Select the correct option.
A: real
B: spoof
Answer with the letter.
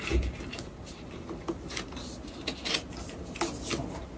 A